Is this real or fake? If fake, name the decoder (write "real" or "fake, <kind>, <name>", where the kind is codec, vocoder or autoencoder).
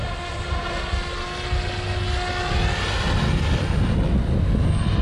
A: real